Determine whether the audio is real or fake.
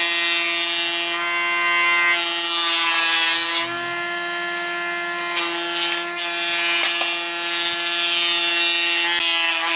real